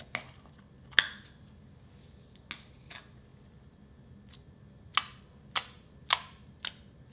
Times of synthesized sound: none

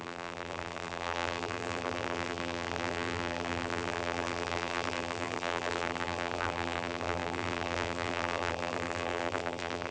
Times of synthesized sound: 0.0-9.9